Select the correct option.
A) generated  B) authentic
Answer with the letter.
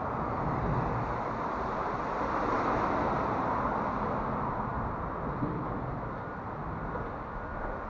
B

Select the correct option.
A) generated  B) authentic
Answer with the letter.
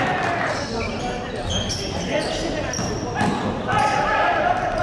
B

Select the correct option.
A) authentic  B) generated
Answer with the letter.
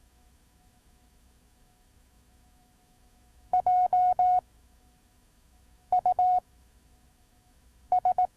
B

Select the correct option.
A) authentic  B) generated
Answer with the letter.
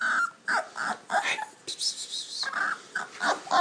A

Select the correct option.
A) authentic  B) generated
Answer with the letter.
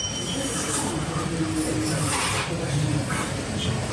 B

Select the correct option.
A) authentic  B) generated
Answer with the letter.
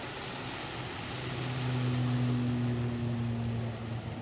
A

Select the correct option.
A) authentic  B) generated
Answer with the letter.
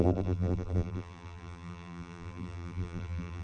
B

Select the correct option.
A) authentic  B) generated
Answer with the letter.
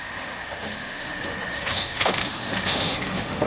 B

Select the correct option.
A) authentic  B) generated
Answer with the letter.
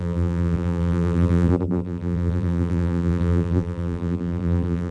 B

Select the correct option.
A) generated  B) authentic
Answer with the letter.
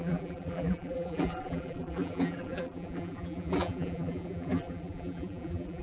A